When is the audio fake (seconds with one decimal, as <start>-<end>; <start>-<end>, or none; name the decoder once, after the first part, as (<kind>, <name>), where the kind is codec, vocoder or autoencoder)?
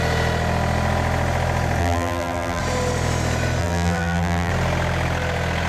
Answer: 1.8-2.6 (vocoder, BigVGAN v2); 3.6-4.5